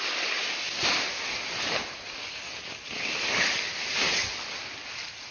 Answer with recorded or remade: recorded